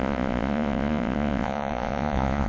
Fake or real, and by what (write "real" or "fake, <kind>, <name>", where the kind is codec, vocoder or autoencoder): fake, vocoder, Vocos